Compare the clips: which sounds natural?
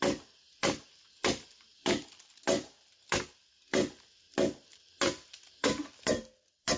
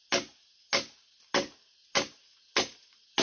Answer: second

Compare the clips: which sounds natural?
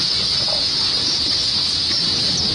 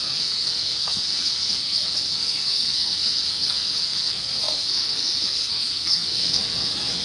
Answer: first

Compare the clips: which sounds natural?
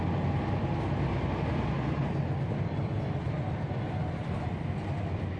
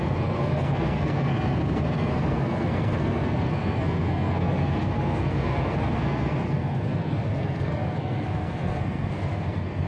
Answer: first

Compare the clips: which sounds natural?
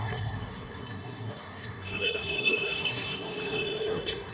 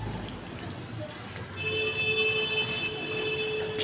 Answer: second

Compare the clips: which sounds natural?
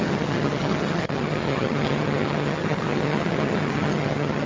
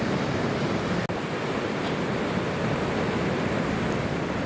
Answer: second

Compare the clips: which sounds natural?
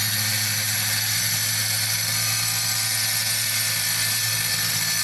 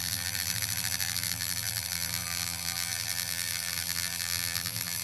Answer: first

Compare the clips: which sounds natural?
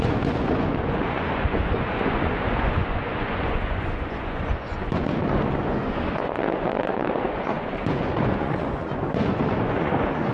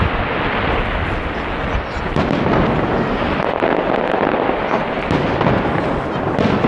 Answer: second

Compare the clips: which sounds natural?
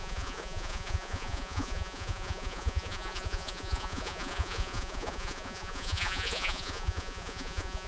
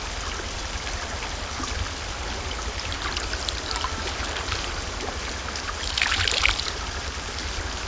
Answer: second